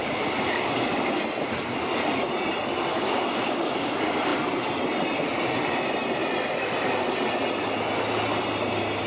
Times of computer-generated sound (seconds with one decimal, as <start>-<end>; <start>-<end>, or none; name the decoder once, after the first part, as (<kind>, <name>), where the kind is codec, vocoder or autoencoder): 0.0-1.2 (codec, DAC); 2.9-3.9

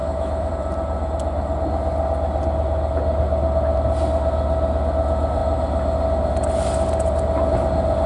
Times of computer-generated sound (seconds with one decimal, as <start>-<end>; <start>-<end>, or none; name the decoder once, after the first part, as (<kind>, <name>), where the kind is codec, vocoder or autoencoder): 0.0-0.5 (autoencoder, DAC-VAE)

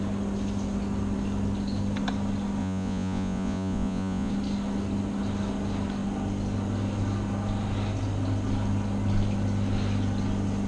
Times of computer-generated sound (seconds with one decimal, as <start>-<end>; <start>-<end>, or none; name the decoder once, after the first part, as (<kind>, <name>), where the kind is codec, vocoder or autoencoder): 2.6-4.3 (vocoder, Vocos)

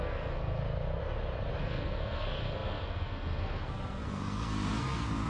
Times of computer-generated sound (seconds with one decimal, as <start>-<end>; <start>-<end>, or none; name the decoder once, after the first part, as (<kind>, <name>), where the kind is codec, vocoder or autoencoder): 0.0-0.6 (codec, SNAC); 1.6-5.3

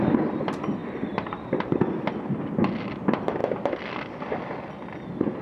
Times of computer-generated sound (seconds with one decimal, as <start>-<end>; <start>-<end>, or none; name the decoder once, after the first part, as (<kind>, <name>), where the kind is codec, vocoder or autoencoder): 0.8-1.7 (vocoder, BigVGAN v2)